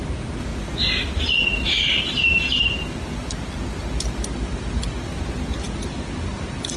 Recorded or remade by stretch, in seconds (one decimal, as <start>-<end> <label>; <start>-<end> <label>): 0.0-6.8 recorded